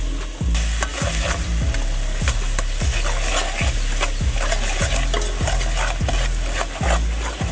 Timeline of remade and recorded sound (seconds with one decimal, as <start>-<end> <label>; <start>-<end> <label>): 0.0-7.5 recorded